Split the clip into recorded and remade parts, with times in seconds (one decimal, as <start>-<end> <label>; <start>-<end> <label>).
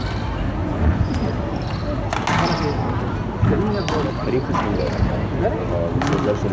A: 0.0-0.6 recorded; 0.6-1.2 remade; 1.2-6.5 recorded